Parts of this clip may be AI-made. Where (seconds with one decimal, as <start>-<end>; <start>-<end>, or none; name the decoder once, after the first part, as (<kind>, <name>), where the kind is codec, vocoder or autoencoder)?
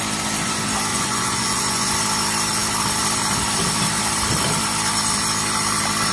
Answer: 0.9-1.9 (vocoder, Vocos)